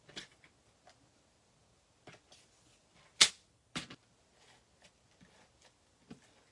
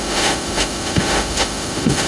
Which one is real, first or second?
first